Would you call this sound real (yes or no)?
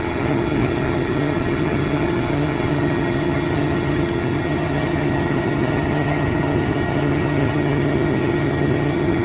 no